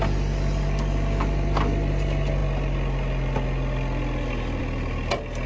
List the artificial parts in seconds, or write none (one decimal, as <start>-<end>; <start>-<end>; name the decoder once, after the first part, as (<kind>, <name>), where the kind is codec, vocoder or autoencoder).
none